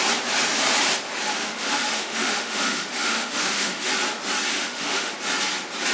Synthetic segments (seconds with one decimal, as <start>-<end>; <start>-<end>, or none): 1.4-3.9; 4.5-5.1